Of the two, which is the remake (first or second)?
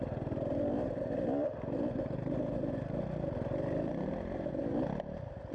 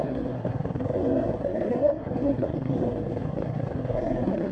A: second